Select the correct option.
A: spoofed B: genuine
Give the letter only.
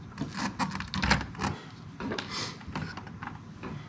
B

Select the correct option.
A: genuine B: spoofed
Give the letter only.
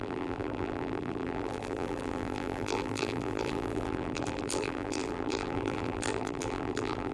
B